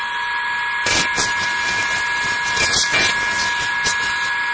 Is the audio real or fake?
real